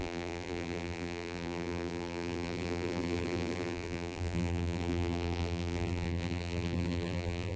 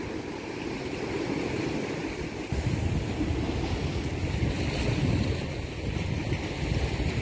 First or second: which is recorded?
second